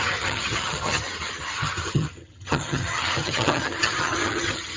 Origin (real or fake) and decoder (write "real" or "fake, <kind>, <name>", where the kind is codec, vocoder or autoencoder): fake, vocoder, HiFi-GAN